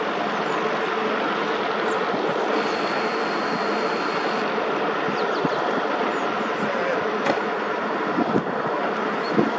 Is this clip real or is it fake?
real